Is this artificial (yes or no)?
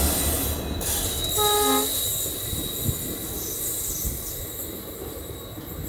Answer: no